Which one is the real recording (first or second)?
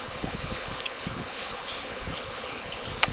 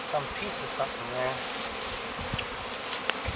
second